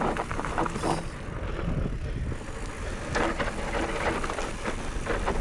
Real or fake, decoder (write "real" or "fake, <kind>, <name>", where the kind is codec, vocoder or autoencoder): real